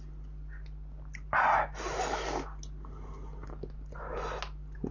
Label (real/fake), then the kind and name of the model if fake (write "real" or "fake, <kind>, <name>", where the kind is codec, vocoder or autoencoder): real